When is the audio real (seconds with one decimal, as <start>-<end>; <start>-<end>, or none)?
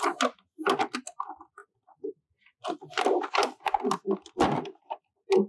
0.0-5.5